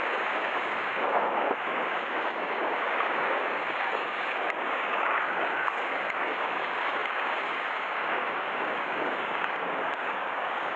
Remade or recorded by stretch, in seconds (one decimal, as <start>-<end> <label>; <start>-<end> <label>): 0.0-10.8 remade